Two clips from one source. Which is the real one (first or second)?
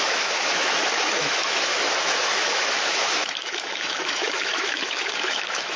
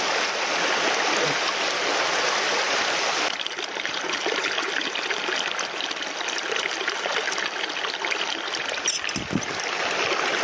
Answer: second